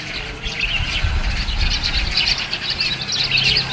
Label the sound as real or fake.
real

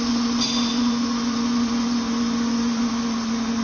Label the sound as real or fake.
real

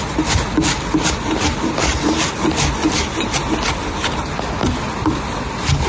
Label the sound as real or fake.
real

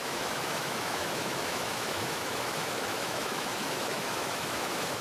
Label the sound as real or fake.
fake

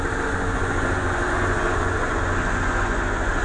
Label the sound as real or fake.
fake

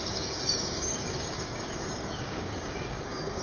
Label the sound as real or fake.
fake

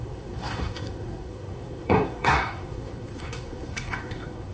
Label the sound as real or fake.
fake